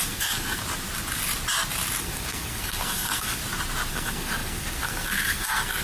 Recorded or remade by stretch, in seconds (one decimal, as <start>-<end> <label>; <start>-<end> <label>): 0.0-0.6 remade; 0.6-2.0 recorded; 2.0-3.4 remade; 3.4-3.9 recorded; 3.9-5.8 remade